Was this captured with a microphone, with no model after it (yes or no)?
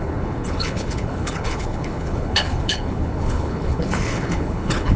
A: no